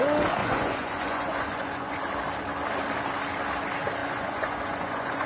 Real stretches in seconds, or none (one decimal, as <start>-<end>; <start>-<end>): 0.0-0.4; 2.0-4.0